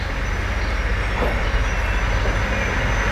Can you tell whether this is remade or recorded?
recorded